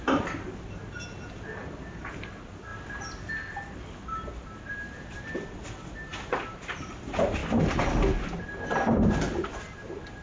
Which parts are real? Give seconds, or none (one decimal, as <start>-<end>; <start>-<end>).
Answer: 0.0-10.2